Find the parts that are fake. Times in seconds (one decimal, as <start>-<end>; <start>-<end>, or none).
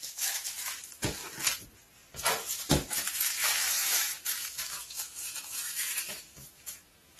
0.0-1.2; 2.9-7.2